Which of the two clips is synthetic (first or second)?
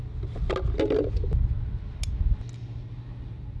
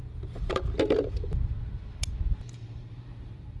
second